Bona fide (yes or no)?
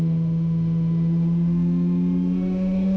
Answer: no